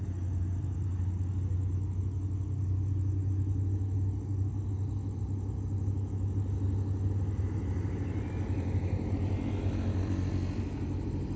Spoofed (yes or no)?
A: no